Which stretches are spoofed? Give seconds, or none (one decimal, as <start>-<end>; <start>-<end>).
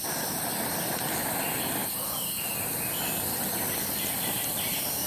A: 0.0-0.9